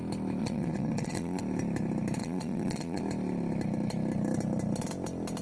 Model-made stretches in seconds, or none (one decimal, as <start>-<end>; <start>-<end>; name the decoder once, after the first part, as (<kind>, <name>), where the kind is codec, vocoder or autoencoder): 0.4-1.4 (vocoder, Vocos); 2.2-3.0